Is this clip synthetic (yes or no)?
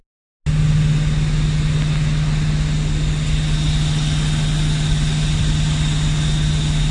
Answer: no